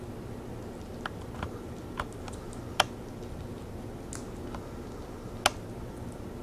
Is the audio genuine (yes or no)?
yes